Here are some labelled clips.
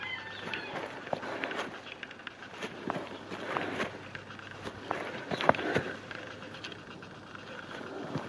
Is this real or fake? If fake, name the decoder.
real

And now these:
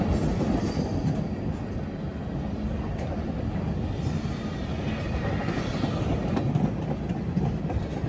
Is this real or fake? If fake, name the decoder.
real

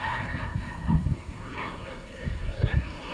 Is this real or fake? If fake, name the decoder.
fake, codec, SNAC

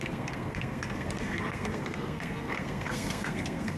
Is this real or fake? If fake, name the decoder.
fake, codec, SNAC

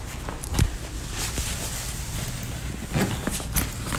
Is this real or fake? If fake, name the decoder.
real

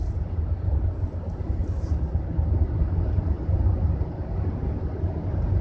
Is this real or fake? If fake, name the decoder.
real